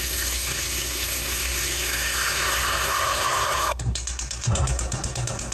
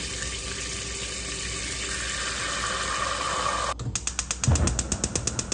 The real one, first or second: second